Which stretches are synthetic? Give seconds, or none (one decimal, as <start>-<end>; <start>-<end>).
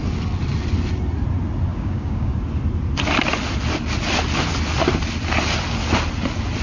1.7-2.3